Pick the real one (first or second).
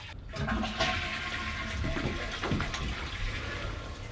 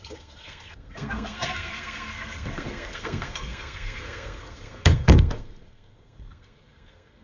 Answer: first